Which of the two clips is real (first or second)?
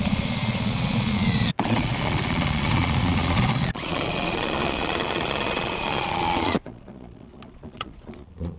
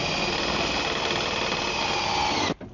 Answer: second